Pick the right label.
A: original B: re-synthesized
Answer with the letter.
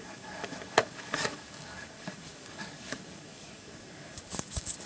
B